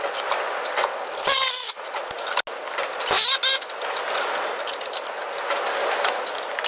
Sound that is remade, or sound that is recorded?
recorded